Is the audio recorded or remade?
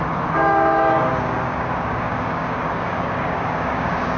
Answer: remade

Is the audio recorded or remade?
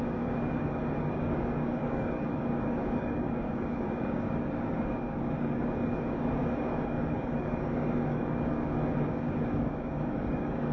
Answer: remade